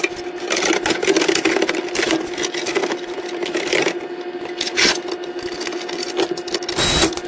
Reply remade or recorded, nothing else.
recorded